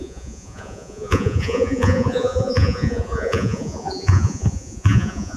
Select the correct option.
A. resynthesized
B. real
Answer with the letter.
A